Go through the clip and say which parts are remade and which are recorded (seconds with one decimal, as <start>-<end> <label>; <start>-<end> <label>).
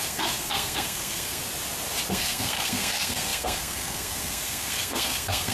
0.0-1.4 remade; 1.4-2.1 recorded; 2.1-5.5 remade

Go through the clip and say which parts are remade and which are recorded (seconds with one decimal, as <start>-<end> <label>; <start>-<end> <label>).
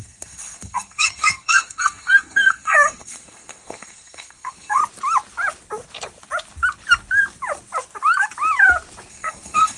0.0-4.8 remade; 4.8-9.1 recorded; 9.1-9.8 remade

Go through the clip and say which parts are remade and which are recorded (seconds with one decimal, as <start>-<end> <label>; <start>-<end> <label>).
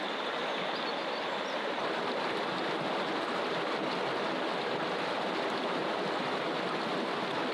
0.0-7.5 recorded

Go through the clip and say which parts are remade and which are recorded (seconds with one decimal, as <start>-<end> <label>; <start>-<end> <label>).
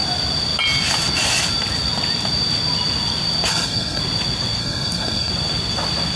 0.0-3.5 recorded; 3.5-4.0 remade; 4.0-4.6 recorded; 4.6-5.3 remade; 5.3-6.2 recorded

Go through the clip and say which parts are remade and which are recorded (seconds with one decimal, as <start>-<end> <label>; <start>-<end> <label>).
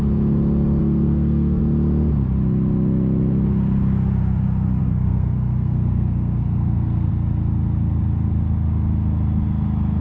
0.0-0.8 recorded; 0.8-1.6 remade; 1.6-4.8 recorded; 4.8-7.1 remade; 7.1-10.0 recorded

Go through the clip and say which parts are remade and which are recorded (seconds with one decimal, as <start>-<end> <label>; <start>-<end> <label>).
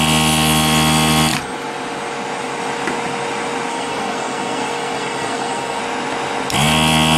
0.0-3.7 recorded; 3.7-5.8 remade; 5.8-7.2 recorded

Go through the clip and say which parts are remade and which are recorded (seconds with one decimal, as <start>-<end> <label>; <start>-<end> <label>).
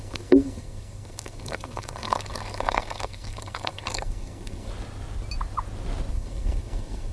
0.0-4.7 remade; 4.7-6.1 recorded; 6.1-7.1 remade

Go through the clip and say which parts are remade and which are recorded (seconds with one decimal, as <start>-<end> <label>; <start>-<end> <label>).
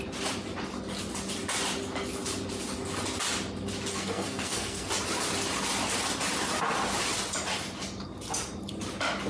0.0-3.9 recorded; 3.9-4.9 remade; 4.9-9.3 recorded